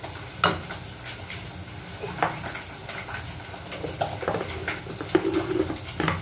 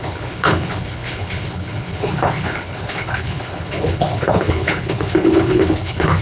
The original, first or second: first